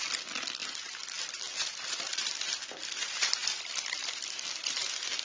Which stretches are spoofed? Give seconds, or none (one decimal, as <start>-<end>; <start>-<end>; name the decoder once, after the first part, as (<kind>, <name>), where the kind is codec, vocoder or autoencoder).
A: 0.0-5.2 (vocoder, BigVGAN v2)